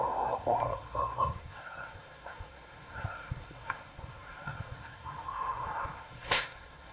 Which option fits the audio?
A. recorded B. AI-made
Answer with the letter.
B